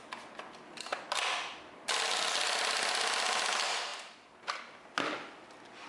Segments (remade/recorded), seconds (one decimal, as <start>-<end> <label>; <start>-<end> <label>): 0.0-5.9 recorded